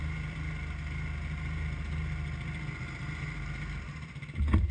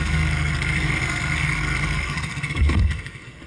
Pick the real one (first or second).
first